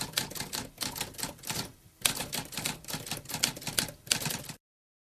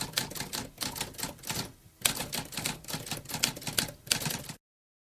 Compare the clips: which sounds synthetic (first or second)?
first